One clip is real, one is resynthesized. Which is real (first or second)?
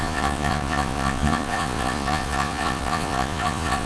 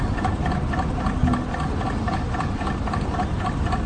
second